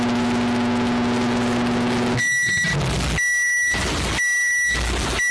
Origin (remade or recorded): recorded